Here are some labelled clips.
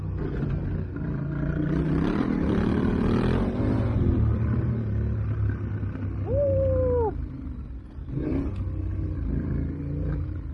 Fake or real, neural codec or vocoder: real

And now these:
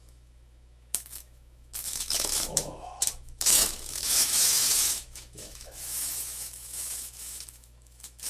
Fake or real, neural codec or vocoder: fake, autoencoder, DAC-VAE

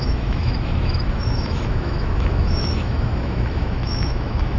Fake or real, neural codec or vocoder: fake, autoencoder, DAC-VAE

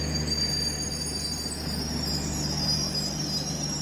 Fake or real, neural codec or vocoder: real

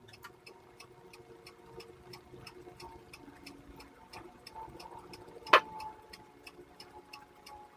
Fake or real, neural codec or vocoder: real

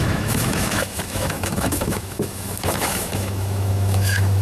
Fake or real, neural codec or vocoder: fake, autoencoder, DAC-VAE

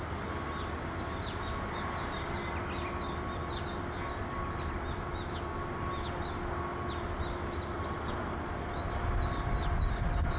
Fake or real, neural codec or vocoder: real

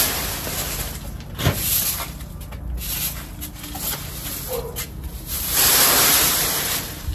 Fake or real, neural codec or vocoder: real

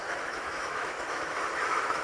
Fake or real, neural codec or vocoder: fake, autoencoder, DAC-VAE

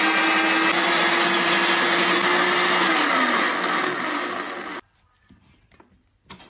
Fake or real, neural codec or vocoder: real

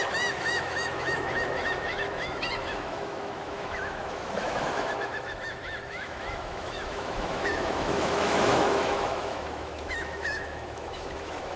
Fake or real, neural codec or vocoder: fake, autoencoder, DAC-VAE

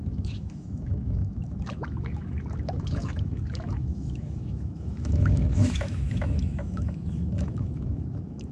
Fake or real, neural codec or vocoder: fake, autoencoder, DAC-VAE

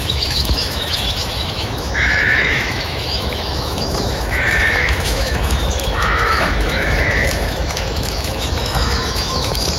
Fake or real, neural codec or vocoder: fake, autoencoder, DAC-VAE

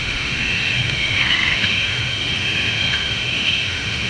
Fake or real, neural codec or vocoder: fake, autoencoder, DAC-VAE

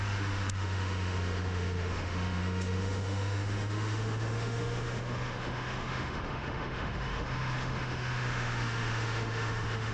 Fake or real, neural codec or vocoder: fake, autoencoder, DAC-VAE